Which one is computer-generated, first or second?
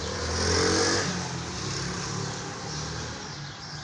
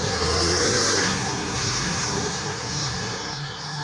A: second